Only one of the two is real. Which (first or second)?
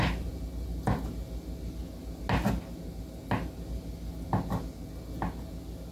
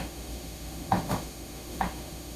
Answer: first